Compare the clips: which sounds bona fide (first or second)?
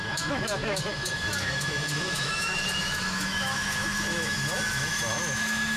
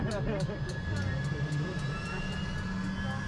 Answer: second